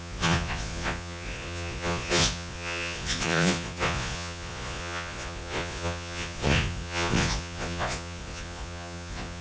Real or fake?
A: fake